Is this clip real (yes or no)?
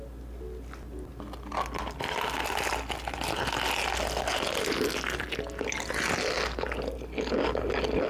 yes